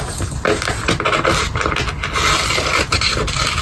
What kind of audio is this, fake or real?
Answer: real